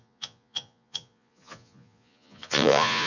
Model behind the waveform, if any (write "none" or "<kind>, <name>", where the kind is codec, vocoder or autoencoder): vocoder, Vocos